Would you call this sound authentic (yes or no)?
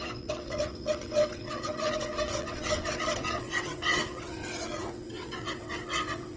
no